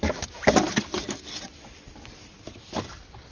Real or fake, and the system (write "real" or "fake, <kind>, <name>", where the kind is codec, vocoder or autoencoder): real